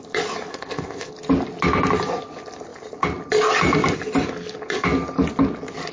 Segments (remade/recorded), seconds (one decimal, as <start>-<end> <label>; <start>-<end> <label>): 0.0-0.5 recorded; 0.5-1.1 remade; 1.1-5.9 recorded